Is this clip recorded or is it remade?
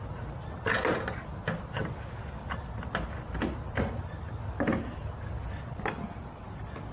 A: recorded